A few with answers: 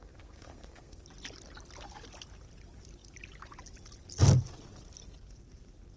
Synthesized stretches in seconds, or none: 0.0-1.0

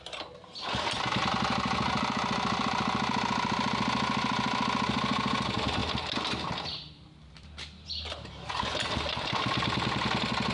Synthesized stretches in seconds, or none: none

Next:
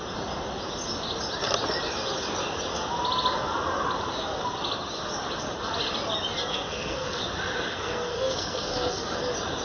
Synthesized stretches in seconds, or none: 6.5-7.2; 7.7-9.2

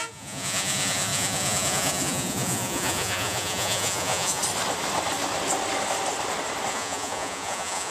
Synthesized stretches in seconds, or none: 0.0-4.4; 6.7-7.9

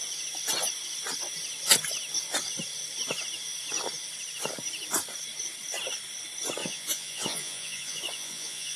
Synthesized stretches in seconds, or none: 6.6-8.8

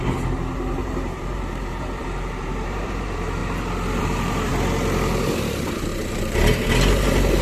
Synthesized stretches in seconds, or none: 0.0-3.4; 4.0-4.5; 5.4-7.4

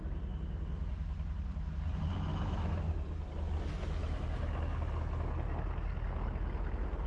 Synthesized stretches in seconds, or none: 2.3-2.9